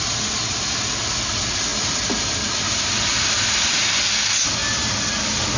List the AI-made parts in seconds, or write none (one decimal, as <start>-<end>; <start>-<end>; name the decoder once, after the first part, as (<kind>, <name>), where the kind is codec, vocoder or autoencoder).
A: none